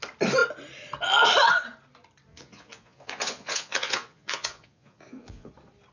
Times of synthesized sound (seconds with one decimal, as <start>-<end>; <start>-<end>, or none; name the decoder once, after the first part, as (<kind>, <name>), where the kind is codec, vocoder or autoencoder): 2.3-5.5 (vocoder, Vocos)